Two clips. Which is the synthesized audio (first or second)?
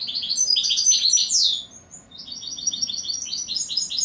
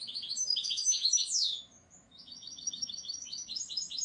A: second